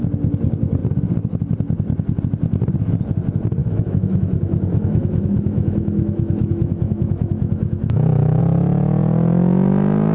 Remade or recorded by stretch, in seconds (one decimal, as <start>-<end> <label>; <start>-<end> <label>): 0.0-3.6 recorded; 3.6-8.4 remade; 8.4-10.1 recorded